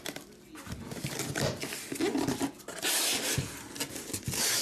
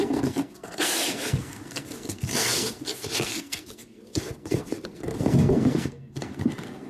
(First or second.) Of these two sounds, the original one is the first